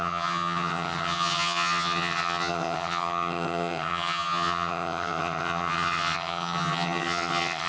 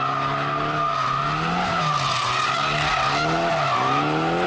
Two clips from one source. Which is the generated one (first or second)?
first